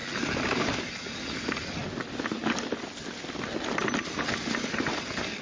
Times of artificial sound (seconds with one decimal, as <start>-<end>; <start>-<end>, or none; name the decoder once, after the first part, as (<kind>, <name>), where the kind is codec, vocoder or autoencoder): none